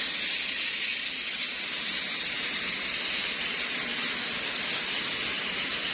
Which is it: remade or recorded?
recorded